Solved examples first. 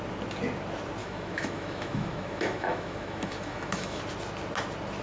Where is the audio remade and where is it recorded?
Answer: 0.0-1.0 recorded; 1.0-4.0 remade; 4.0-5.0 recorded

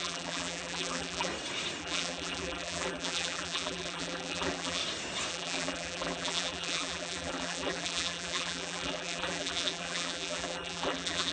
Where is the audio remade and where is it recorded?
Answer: 0.0-1.3 remade; 1.3-1.8 recorded; 1.8-4.8 remade; 4.8-5.3 recorded; 5.3-11.3 remade

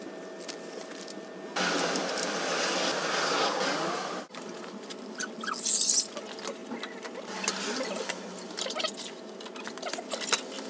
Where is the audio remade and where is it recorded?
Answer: 0.0-10.7 recorded

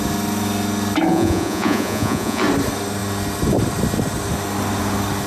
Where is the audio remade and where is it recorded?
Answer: 0.0-1.1 recorded; 1.1-2.4 remade; 2.4-5.3 recorded

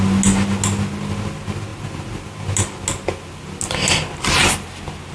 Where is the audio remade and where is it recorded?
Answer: 0.0-5.1 recorded